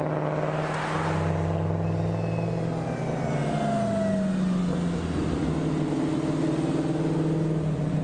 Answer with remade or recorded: recorded